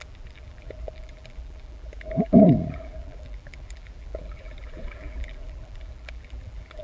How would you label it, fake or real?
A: fake